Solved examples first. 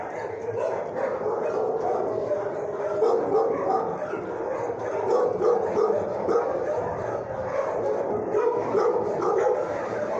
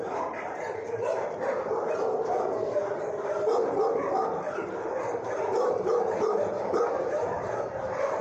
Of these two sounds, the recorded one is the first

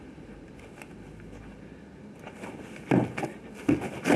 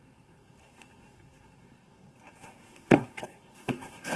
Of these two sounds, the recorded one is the first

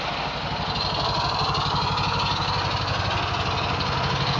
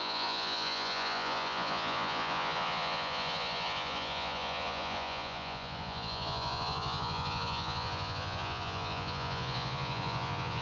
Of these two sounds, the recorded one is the first